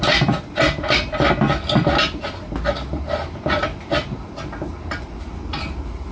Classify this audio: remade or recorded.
recorded